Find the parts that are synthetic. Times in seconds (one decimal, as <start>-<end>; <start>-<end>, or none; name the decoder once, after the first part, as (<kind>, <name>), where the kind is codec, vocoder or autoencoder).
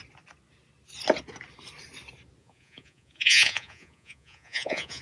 2.4-5.0 (vocoder, Vocos)